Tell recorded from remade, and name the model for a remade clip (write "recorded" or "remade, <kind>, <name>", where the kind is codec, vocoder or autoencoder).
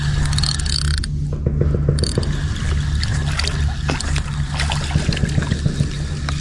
recorded